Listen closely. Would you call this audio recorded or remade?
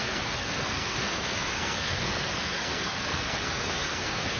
remade